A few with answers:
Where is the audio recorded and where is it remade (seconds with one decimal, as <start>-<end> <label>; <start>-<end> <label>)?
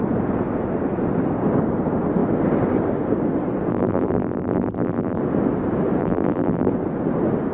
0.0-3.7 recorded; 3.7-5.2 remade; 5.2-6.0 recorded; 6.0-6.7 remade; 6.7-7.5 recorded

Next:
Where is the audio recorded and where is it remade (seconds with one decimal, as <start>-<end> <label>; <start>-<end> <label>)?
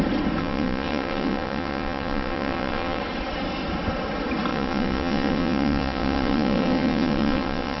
0.0-0.4 recorded; 0.4-3.0 remade; 3.0-4.5 recorded; 4.5-7.8 remade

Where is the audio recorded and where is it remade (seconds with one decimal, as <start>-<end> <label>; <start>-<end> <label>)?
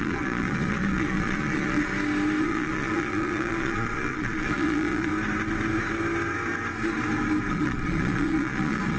0.0-1.9 remade; 1.9-2.4 recorded; 2.4-5.1 remade; 5.1-7.5 recorded; 7.5-9.0 remade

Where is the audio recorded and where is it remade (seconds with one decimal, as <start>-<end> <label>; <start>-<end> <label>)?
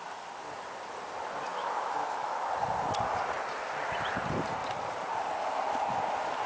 0.0-1.5 recorded; 1.5-2.5 remade; 2.5-6.5 recorded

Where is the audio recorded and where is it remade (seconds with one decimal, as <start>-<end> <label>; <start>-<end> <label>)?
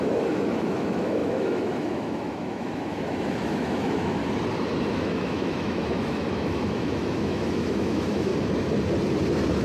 0.0-4.2 remade; 4.2-4.9 recorded; 4.9-8.3 remade; 8.3-9.6 recorded